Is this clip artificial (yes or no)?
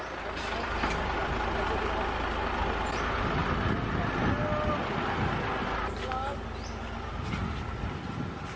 no